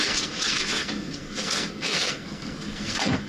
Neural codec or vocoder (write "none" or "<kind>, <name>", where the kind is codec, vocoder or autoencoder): codec, SNAC